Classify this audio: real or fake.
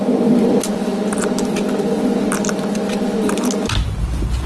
real